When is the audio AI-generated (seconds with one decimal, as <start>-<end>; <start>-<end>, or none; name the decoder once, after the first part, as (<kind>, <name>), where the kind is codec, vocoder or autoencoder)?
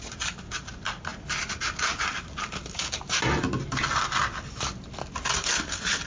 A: none